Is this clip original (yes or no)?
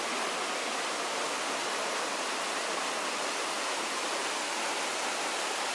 yes